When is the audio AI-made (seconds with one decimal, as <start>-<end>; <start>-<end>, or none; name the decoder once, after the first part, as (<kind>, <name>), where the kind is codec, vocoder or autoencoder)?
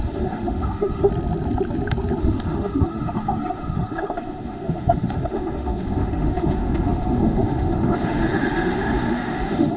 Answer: 0.0-1.1 (autoencoder, DAC-VAE); 2.2-9.8